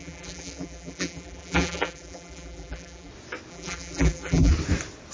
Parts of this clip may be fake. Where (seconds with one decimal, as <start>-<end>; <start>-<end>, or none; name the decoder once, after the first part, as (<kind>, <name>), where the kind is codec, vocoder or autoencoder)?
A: 0.0-3.1 (vocoder, BigVGAN v2); 3.5-4.5